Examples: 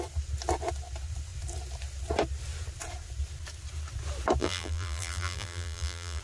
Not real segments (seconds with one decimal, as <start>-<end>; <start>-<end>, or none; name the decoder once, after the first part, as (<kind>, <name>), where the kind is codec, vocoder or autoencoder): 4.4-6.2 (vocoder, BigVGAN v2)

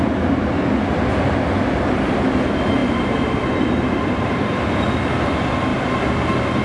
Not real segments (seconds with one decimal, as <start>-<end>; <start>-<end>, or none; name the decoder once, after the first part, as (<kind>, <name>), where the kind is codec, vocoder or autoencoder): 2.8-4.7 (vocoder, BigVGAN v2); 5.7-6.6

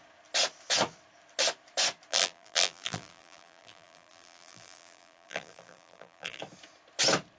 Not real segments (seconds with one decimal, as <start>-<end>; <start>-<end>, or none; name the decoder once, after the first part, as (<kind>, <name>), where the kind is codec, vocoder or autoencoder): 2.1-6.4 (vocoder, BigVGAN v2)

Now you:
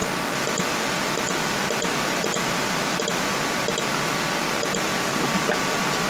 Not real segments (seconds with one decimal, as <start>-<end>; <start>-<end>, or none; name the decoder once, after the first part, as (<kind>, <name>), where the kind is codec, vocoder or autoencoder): none